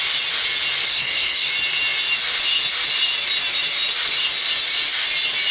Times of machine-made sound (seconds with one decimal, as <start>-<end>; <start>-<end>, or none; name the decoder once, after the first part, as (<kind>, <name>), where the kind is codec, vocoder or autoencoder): 0.9-1.5 (codec, SNAC)